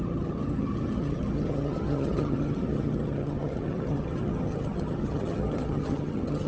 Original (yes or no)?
no